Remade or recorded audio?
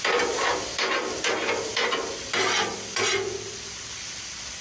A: recorded